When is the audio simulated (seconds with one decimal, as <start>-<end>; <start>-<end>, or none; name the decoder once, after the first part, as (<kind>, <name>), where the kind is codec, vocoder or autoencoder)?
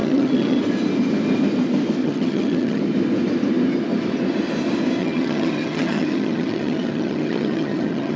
0.0-0.6 (vocoder, HiFi-GAN); 2.0-2.8; 5.0-8.2